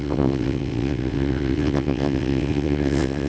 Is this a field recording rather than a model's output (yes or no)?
no